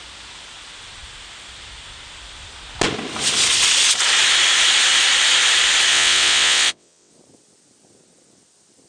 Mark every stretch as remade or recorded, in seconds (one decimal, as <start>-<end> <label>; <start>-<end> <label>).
0.0-5.9 recorded; 5.9-7.1 remade; 7.1-8.9 recorded